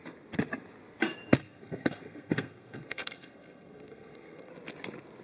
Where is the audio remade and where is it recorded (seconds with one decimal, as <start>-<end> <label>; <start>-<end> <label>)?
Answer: 0.0-1.4 recorded; 1.4-4.5 remade; 4.5-5.2 recorded

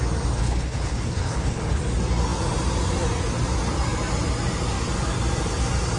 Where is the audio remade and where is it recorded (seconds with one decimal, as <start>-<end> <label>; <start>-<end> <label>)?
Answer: 0.0-0.4 recorded; 0.4-1.8 remade; 1.8-6.0 recorded